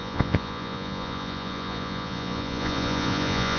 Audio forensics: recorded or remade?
remade